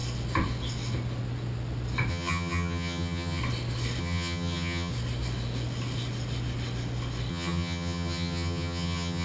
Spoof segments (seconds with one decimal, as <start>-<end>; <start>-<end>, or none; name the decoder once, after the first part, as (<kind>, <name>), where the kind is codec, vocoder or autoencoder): 2.1-3.4 (vocoder, HiFi-GAN); 4.0-4.9; 7.3-9.2